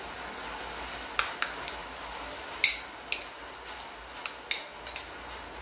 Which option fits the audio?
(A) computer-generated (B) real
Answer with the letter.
B